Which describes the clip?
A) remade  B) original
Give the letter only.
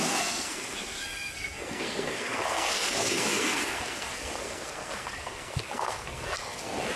A